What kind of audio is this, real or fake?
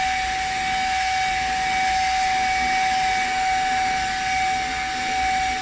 real